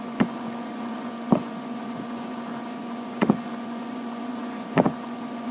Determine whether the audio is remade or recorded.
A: remade